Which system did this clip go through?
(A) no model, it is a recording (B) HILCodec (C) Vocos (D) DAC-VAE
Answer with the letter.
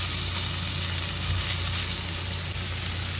A